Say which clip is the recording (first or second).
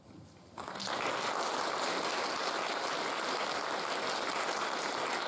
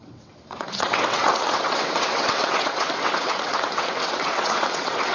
first